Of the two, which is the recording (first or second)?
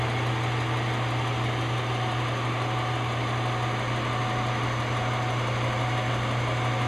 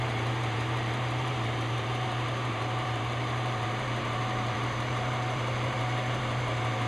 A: first